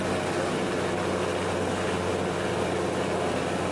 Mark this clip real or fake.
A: real